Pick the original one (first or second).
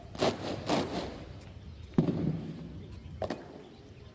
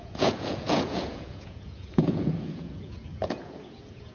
first